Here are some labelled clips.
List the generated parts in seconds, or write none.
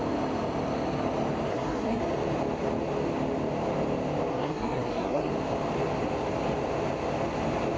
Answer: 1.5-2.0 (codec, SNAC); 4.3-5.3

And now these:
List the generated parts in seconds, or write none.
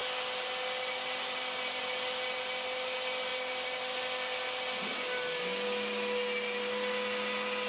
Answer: none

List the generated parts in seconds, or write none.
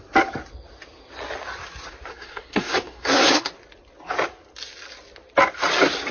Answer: 2.1-3.5 (codec, SNAC)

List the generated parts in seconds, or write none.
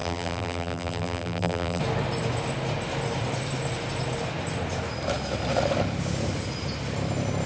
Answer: 0.0-1.8 (vocoder, BigVGAN v2)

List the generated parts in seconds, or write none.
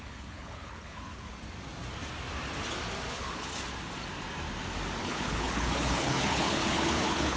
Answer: 0.0-1.3 (codec, HILCodec); 3.1-3.5; 5.0-7.4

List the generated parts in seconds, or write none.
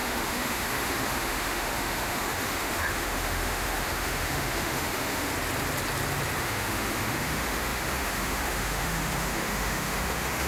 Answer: 0.0-5.3 (autoencoder, DAC-VAE); 6.4-10.5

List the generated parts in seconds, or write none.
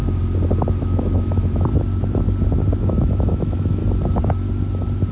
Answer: 0.8-1.7 (autoencoder, DAC-VAE); 2.8-3.8